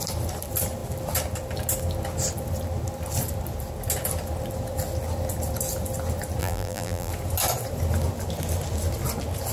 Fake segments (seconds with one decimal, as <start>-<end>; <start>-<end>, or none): 6.4-7.1

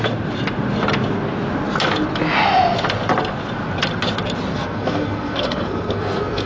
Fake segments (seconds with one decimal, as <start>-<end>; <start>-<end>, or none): 4.5-6.5

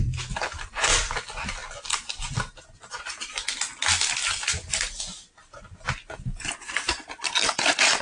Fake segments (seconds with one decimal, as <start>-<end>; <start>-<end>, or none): 0.0-3.5; 4.5-8.0

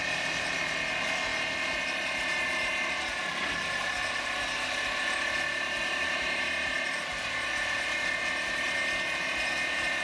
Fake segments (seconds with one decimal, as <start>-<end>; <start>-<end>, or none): none

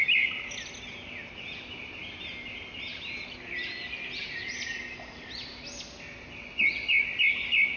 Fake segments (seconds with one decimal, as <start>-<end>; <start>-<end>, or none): 2.9-4.7